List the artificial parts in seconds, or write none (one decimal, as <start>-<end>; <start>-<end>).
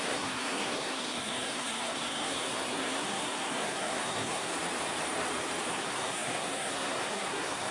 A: 0.0-4.5; 5.7-7.7